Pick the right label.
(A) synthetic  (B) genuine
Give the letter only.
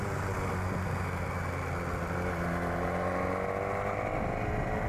B